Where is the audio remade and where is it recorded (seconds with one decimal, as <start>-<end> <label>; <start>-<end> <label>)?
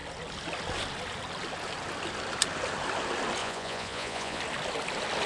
0.0-3.4 recorded; 3.4-4.4 remade; 4.4-5.3 recorded